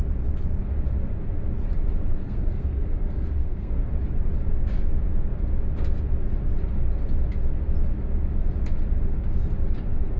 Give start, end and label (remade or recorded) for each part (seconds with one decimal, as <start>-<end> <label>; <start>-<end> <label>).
0.0-2.1 recorded; 2.1-3.8 remade; 3.8-10.2 recorded